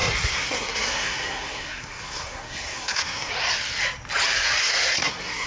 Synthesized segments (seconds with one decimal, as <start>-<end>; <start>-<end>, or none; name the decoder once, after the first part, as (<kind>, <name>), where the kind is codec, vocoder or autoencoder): 0.0-3.3 (codec, SNAC); 4.6-5.5